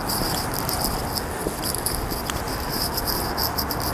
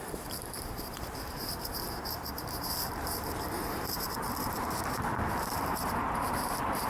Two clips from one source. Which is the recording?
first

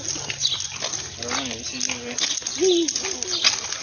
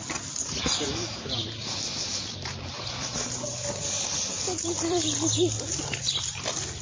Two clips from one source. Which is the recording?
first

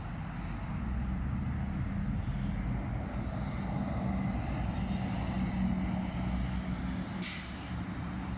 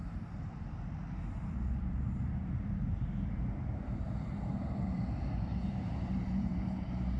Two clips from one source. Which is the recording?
first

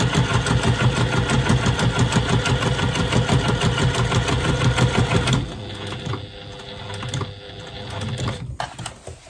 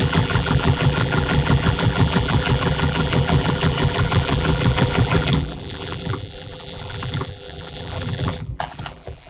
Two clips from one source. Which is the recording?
first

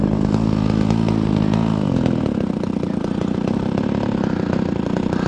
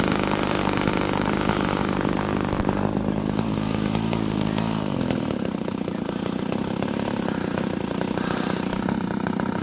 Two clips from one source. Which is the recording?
first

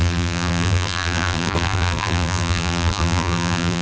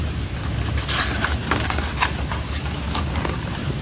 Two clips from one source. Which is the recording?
second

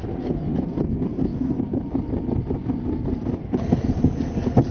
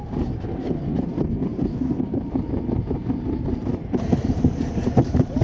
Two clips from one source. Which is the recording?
first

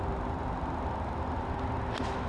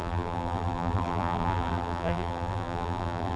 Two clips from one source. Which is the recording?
first